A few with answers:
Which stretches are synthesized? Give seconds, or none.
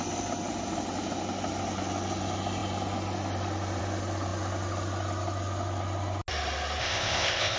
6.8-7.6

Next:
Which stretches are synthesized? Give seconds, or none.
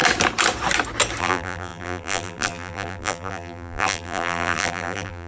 1.2-5.3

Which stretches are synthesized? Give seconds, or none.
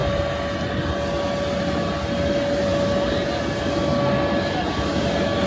none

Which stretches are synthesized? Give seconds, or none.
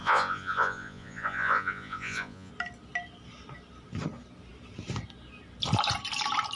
0.0-2.5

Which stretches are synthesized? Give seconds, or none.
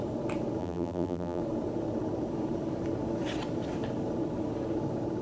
0.6-1.4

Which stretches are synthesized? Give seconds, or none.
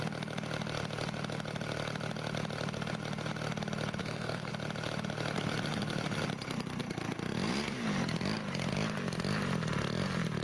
4.0-4.5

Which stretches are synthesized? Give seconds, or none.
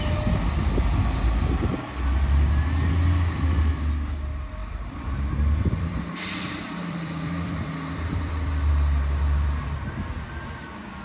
4.6-8.7